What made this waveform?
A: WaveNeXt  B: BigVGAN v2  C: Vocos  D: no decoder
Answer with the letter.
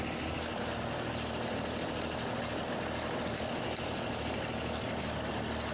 D